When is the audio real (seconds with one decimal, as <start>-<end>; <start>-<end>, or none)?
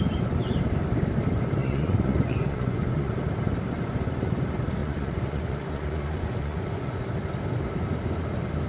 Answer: 0.0-1.6; 3.1-4.8; 7.0-8.7